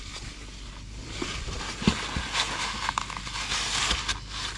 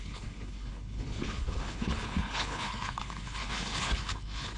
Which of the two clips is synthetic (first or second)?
second